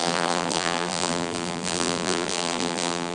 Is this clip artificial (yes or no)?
yes